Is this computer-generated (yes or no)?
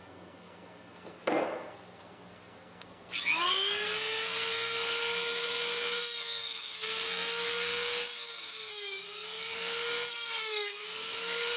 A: yes